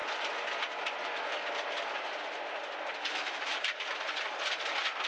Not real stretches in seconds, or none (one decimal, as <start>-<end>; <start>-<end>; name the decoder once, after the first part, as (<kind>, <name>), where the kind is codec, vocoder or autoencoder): 3.1-3.5 (autoencoder, DAC-VAE)